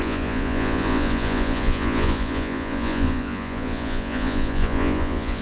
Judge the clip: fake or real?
fake